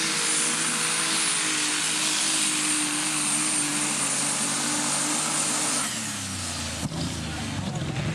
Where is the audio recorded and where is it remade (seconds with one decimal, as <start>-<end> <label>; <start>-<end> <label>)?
0.0-8.1 recorded